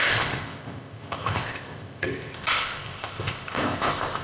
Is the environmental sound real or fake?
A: fake